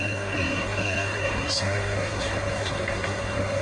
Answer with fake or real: fake